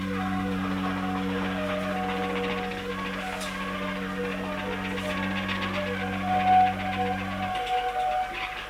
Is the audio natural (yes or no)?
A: yes